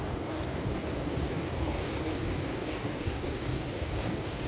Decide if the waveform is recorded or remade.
remade